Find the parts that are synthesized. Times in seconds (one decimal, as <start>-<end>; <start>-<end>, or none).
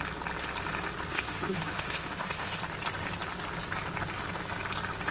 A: 1.1-2.6